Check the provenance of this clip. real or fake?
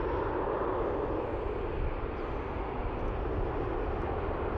real